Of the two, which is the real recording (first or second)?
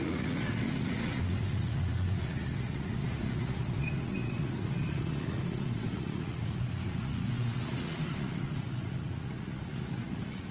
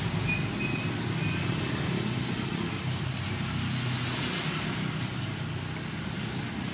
second